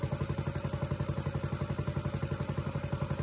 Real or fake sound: real